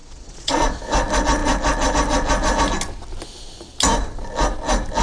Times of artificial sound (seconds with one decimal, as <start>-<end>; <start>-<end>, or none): 0.0-0.8